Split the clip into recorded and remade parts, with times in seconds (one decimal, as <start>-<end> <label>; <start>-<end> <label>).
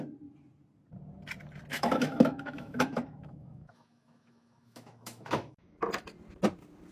0.0-1.7 recorded; 1.7-5.8 remade; 5.8-6.9 recorded